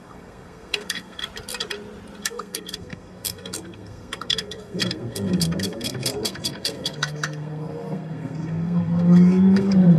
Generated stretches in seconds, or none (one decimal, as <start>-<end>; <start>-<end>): 0.0-1.2; 2.2-10.0